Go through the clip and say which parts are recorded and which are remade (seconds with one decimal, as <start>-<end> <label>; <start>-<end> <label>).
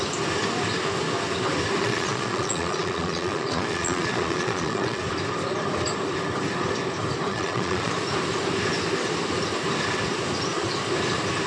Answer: 0.0-1.8 recorded; 1.8-5.0 remade; 5.0-7.3 recorded; 7.3-7.9 remade; 7.9-11.5 recorded